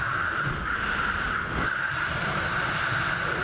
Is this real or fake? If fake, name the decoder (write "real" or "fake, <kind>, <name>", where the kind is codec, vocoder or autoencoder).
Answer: real